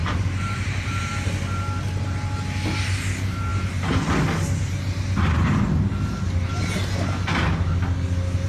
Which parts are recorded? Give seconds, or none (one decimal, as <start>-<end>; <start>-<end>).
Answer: 1.1-8.5

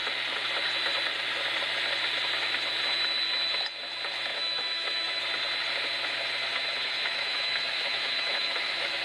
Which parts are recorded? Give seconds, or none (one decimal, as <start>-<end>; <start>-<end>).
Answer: 0.0-4.3; 5.2-6.5

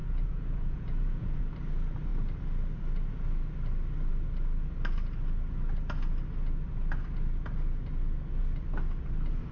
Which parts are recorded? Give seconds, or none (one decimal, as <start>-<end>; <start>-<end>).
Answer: 1.4-9.5

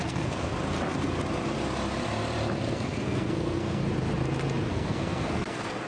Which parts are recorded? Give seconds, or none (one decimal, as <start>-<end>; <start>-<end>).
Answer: 0.5-2.7; 3.8-4.7

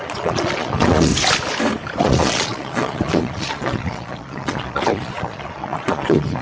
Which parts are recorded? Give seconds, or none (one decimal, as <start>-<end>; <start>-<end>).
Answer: 1.1-2.0

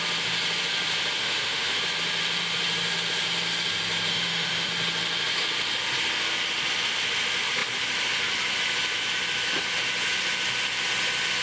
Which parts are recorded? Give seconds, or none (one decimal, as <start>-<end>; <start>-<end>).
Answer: 0.0-1.2; 1.8-4.1; 4.7-11.4

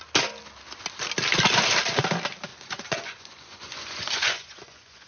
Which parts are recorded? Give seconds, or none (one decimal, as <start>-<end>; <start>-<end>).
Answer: 0.0-2.5

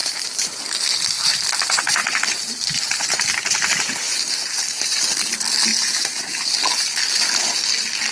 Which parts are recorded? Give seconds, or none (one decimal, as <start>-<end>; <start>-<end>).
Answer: 0.6-2.0; 5.0-5.7; 6.5-8.1